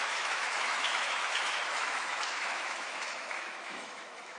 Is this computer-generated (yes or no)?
yes